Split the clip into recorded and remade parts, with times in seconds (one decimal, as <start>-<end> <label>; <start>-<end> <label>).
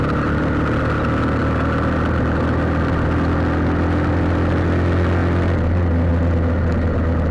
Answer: 0.0-7.3 recorded